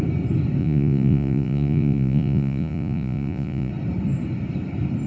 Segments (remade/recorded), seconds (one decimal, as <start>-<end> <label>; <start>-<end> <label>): 0.0-0.6 recorded; 0.6-3.7 remade; 3.7-5.1 recorded